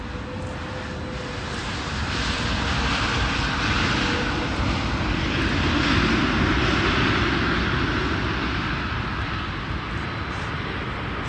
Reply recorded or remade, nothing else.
recorded